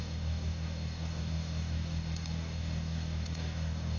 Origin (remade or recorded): remade